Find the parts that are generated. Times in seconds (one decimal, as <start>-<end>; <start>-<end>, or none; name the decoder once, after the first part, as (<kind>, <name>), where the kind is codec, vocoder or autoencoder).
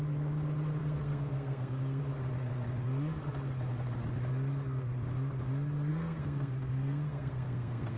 0.8-2.0 (codec, SNAC); 5.9-8.0